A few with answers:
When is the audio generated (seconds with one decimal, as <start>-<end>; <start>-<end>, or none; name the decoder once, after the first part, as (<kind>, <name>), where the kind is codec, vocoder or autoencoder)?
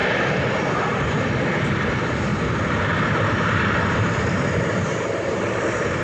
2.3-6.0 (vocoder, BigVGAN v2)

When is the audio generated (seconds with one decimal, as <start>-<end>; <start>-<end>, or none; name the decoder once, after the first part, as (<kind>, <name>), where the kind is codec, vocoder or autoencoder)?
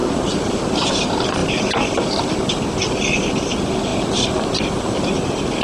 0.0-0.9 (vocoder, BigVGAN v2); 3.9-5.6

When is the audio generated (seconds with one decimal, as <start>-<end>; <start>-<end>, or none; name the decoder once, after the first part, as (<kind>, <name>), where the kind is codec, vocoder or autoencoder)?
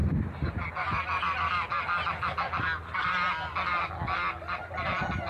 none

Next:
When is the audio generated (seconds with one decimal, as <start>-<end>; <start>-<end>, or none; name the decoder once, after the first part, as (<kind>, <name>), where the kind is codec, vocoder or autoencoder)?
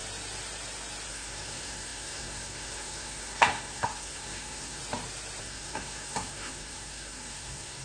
1.1-4.8 (codec, SNAC); 5.4-7.8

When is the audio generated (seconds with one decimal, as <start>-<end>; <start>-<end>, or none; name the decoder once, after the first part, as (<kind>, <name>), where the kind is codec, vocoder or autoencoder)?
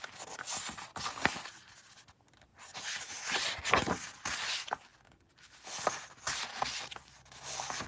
none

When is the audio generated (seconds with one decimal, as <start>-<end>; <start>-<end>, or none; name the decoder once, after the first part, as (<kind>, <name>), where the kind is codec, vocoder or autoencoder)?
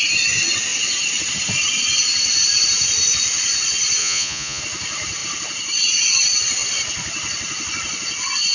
4.0-4.6 (vocoder, Vocos)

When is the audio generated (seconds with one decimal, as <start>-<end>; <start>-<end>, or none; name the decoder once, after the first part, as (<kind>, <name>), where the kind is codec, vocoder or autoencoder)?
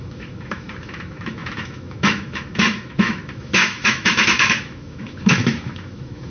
0.0-6.3 (autoencoder, DAC-VAE)